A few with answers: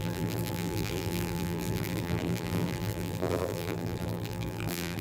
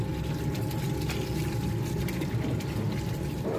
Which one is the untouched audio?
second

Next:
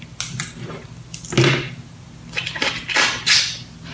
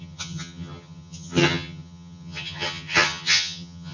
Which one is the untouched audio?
first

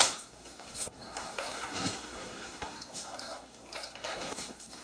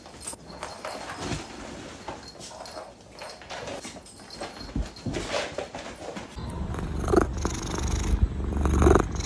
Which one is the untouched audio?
second